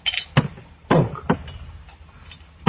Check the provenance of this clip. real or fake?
real